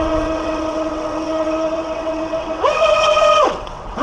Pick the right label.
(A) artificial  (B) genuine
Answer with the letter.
A